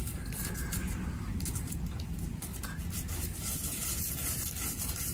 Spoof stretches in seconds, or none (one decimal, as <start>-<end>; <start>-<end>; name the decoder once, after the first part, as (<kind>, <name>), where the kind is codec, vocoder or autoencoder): 0.8-1.7 (vocoder, BigVGAN v2); 2.5-4.4

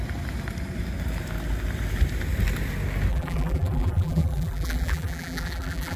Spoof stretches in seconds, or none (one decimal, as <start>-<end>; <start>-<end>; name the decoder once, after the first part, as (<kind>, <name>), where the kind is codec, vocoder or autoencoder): 3.1-6.0 (vocoder, BigVGAN v2)

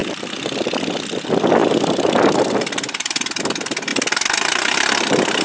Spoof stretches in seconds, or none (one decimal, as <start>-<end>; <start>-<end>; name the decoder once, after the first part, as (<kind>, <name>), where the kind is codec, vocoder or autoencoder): 0.0-1.2 (vocoder, BigVGAN v2); 1.6-3.4; 3.9-5.4

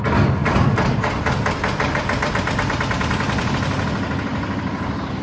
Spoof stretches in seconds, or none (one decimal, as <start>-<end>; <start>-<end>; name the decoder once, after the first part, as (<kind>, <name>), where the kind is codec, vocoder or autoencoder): 0.4-3.5 (vocoder, BigVGAN v2); 4.3-5.2

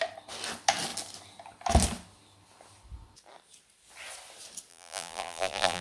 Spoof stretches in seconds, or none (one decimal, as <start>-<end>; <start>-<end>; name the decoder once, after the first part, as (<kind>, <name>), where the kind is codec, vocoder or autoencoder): 4.7-5.8 (vocoder, BigVGAN v2)

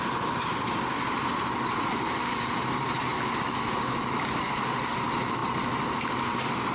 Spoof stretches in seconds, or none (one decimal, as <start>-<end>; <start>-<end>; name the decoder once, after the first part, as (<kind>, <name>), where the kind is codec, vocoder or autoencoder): 1.9-3.4 (vocoder, BigVGAN v2)

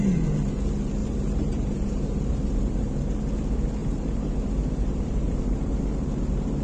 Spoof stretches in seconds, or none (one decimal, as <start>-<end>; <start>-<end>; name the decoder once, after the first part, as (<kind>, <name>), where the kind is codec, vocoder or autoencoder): 1.0-3.1 (vocoder, BigVGAN v2); 3.8-5.8